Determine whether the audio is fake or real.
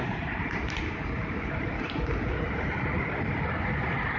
fake